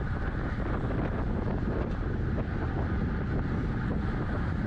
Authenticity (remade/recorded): recorded